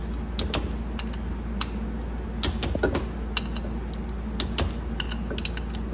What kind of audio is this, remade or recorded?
recorded